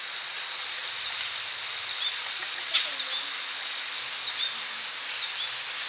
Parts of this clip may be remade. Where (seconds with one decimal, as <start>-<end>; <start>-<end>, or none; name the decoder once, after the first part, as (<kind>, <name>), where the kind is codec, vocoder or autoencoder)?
0.0-0.8 (vocoder, BigVGAN v2); 1.7-2.4; 4.0-5.9